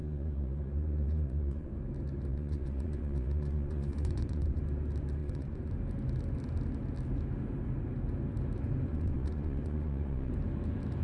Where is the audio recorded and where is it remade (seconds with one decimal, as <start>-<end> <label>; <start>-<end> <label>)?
0.0-1.7 remade; 1.7-2.3 recorded; 2.3-4.6 remade; 4.6-5.2 recorded; 5.2-5.7 remade; 5.7-8.9 recorded; 8.9-10.3 remade; 10.3-11.0 recorded